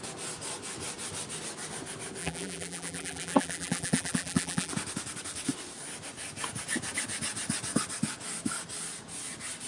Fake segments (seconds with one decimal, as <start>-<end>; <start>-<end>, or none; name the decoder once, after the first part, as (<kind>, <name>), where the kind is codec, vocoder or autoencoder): 2.2-4.7 (vocoder, BigVGAN v2)